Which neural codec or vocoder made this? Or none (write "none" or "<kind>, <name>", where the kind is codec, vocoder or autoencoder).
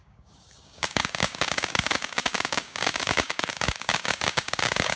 codec, DAC